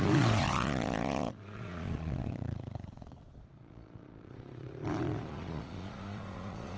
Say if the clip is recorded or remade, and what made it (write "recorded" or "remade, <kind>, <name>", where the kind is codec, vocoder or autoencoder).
remade, vocoder, Vocos